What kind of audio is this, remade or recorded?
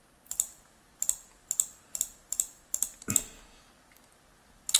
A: recorded